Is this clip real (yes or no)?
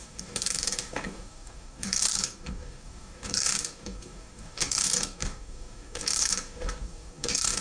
no